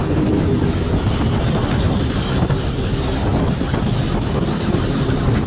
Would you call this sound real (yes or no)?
yes